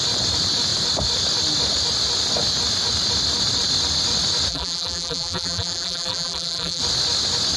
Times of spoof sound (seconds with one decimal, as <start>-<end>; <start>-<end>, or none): 4.5-6.8